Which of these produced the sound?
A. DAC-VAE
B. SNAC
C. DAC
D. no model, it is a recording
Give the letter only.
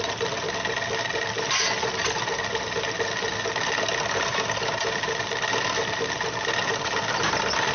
D